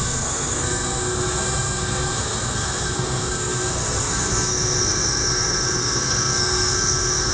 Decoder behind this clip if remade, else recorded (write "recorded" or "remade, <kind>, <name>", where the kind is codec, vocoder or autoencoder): remade, codec, SNAC